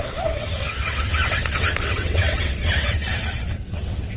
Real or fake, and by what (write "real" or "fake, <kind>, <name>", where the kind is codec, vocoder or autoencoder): fake, vocoder, WaveNeXt